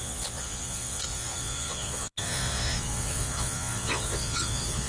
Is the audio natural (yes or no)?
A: no